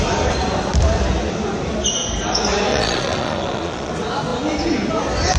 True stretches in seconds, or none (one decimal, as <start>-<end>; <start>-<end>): 0.0-2.7; 3.9-5.4